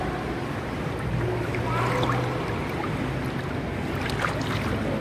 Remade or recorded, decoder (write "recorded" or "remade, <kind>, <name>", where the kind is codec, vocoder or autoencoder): recorded